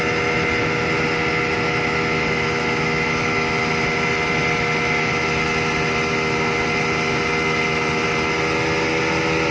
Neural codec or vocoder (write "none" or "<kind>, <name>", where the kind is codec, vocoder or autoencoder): none